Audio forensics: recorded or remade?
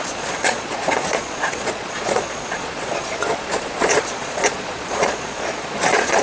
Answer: remade